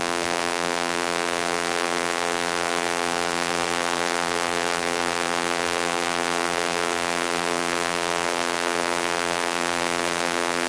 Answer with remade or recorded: remade